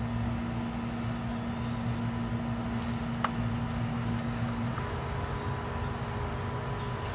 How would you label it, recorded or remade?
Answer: recorded